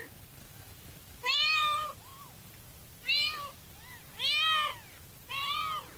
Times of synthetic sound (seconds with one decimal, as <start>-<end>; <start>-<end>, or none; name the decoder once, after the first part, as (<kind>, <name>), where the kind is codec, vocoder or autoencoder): 0.0-2.1 (vocoder, BigVGAN v2)